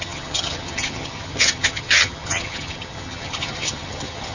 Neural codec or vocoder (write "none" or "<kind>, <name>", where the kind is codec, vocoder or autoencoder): vocoder, HiFi-GAN